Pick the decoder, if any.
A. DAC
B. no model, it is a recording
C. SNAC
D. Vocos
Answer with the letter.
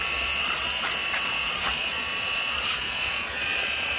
D